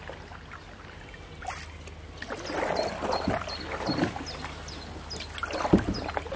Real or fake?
real